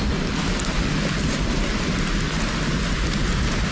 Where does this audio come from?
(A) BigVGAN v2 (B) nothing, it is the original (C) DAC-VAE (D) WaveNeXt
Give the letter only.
B